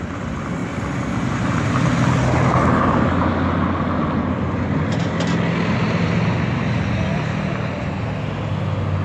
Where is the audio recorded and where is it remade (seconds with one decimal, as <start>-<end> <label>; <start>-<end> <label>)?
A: 0.0-9.0 recorded